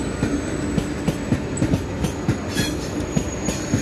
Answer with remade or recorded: recorded